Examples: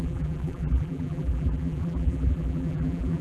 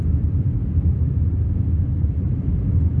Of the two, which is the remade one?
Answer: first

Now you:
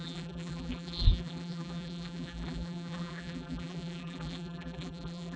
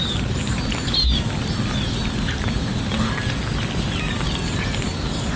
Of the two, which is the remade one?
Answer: first